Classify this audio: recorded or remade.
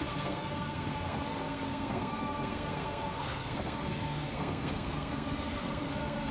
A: remade